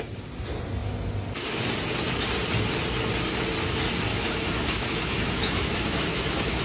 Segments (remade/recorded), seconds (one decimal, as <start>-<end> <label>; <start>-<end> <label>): 0.0-4.1 recorded; 4.1-6.6 remade